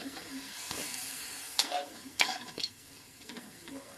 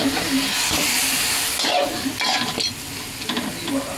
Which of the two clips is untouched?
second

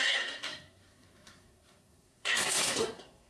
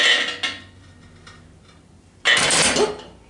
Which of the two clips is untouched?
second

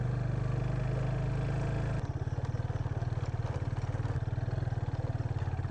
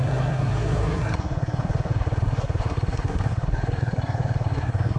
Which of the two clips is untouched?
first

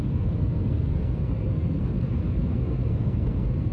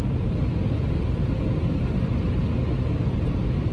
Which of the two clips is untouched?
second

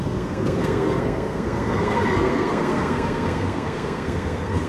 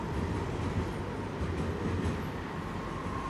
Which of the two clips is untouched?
second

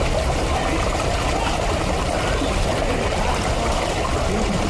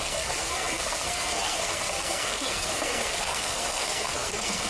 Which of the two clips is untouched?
first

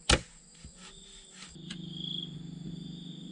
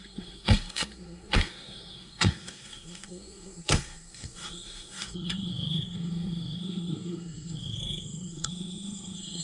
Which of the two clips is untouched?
first